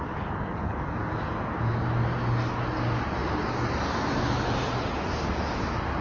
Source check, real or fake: real